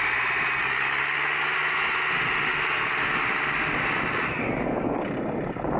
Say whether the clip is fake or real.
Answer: real